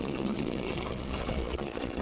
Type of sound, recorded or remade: remade